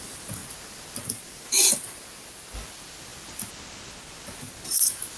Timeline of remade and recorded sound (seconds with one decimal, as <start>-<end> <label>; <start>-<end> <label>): 0.0-5.2 recorded